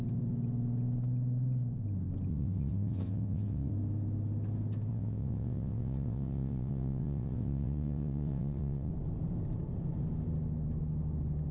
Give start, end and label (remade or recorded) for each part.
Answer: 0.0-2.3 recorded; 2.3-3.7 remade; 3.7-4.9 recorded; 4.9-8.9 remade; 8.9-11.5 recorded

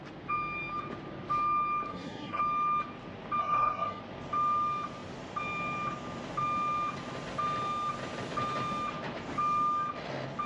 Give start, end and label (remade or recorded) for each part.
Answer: 0.0-1.9 recorded; 1.9-2.4 remade; 2.4-3.4 recorded; 3.4-4.0 remade; 4.0-10.5 recorded